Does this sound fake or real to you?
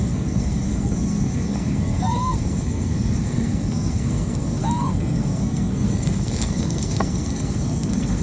fake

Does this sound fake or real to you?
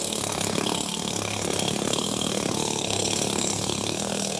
fake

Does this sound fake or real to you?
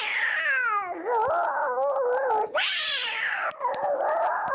real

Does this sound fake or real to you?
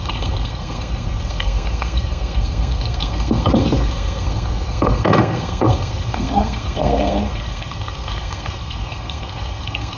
fake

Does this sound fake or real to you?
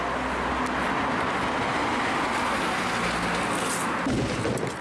real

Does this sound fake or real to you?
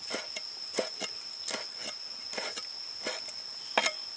real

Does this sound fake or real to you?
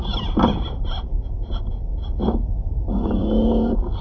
real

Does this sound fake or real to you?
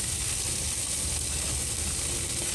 real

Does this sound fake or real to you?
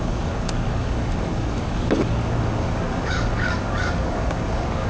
fake